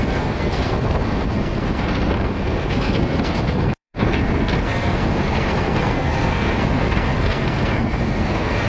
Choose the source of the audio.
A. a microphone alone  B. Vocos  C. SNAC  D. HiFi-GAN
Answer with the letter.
C